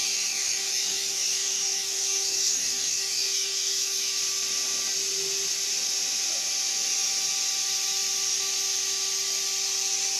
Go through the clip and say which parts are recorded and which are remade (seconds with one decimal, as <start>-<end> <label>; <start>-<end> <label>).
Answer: 0.0-4.2 remade; 4.2-10.2 recorded